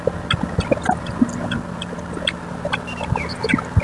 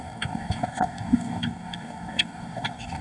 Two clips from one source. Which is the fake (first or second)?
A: second